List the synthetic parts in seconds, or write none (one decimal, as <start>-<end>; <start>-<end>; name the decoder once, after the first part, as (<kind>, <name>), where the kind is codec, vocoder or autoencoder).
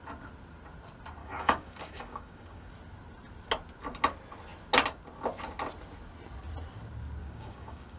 1.2-2.7 (codec, DAC); 7.2-8.0